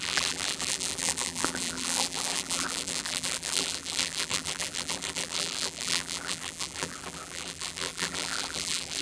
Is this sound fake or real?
fake